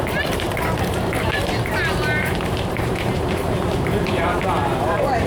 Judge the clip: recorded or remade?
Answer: remade